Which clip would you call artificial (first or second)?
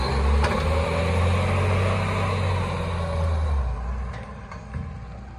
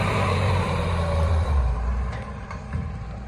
second